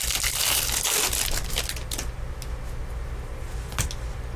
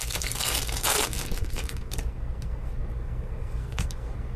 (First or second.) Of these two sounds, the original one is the first